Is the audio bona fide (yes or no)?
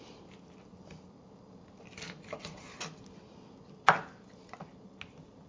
yes